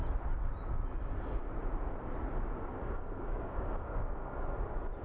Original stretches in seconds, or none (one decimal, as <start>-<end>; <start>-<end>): 0.0-2.7; 4.4-5.0